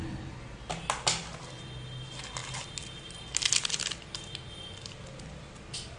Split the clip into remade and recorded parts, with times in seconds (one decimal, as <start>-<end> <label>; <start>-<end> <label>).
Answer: 0.0-6.0 recorded